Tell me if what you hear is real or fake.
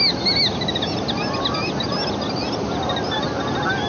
real